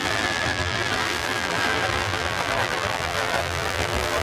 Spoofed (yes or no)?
yes